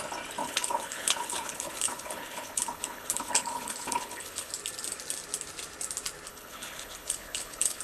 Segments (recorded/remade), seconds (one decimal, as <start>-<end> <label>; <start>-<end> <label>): 0.0-0.4 recorded; 0.4-4.5 remade; 4.5-6.3 recorded; 6.3-7.8 remade